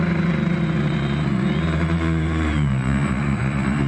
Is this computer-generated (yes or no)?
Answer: yes